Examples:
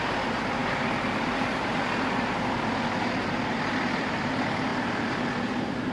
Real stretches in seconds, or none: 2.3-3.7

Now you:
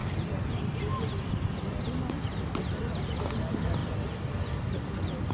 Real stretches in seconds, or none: 3.2-5.3